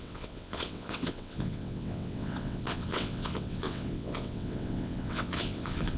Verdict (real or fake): fake